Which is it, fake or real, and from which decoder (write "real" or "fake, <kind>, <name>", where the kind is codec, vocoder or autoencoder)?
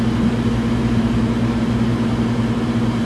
real